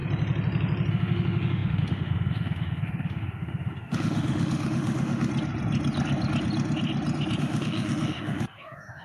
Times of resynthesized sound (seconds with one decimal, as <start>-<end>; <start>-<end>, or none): 0.9-5.3; 7.4-9.0

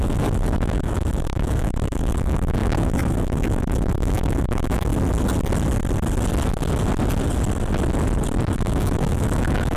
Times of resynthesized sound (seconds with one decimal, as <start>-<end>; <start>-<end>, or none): 0.0-4.9; 8.5-9.8

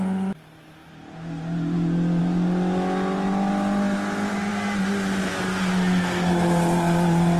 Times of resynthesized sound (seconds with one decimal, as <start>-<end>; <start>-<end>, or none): none

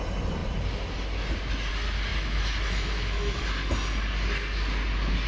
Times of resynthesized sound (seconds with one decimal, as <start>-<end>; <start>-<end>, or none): 2.1-3.4

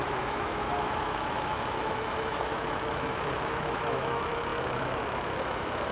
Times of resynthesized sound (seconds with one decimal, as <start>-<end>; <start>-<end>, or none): 0.0-5.9

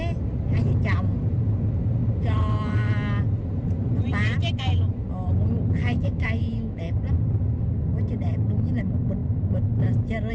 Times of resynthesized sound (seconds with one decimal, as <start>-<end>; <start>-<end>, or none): 5.8-6.8

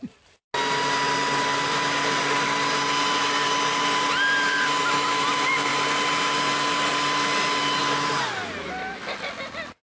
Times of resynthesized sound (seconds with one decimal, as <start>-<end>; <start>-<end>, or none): none

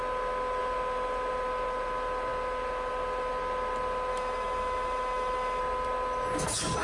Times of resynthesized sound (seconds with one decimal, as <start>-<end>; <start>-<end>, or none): 4.1-5.6